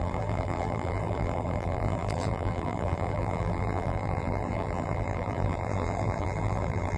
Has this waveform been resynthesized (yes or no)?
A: yes